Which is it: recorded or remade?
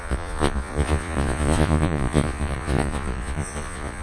remade